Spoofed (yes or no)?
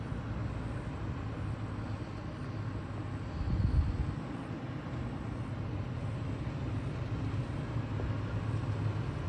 no